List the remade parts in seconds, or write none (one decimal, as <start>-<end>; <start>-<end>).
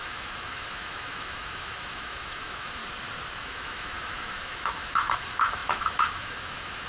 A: 0.0-2.8; 3.4-6.9